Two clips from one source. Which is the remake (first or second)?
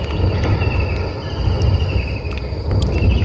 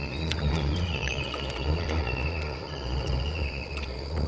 second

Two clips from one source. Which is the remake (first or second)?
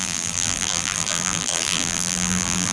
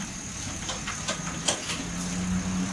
first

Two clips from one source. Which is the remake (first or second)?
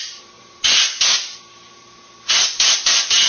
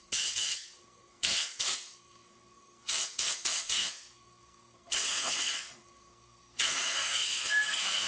second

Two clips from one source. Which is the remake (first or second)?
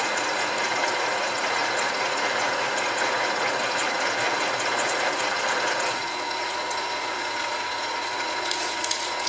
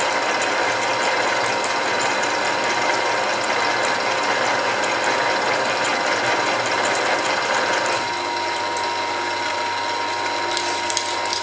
first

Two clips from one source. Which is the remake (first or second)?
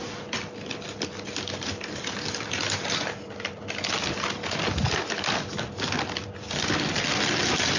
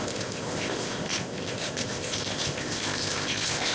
second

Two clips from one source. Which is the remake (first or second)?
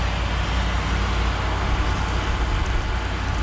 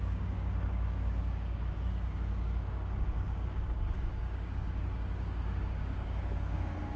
second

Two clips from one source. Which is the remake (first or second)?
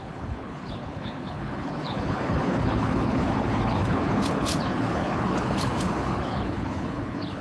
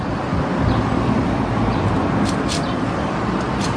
first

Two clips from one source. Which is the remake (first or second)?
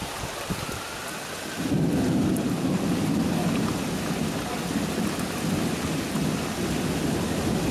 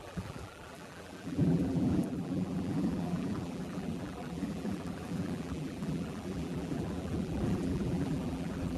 second